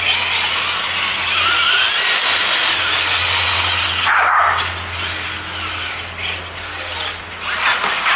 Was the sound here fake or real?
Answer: real